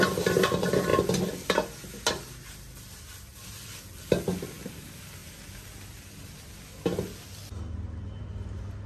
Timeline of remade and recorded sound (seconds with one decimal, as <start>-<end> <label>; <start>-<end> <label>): 0.0-8.9 recorded